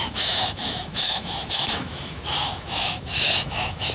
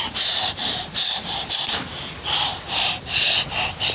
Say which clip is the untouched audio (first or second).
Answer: second